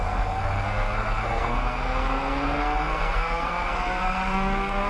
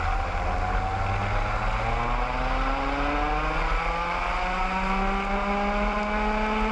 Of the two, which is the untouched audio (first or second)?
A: second